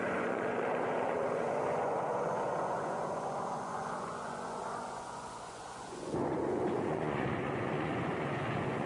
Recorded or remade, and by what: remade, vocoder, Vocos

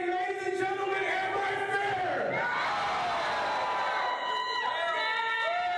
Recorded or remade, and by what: recorded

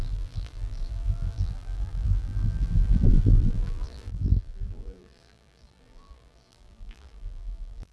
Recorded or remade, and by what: remade, vocoder, BigVGAN v2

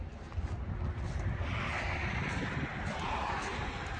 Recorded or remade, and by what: recorded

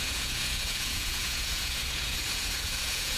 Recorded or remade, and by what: remade, vocoder, Vocos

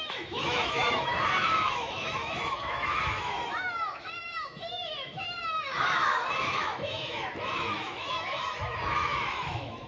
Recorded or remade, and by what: remade, autoencoder, DAC-VAE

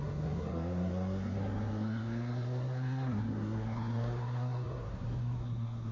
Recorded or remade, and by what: remade, codec, SNAC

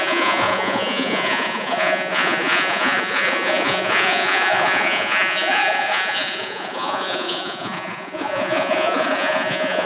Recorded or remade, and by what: remade, vocoder, Vocos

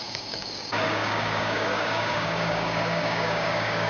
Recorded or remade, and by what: remade, codec, DAC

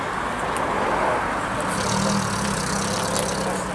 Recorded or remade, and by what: recorded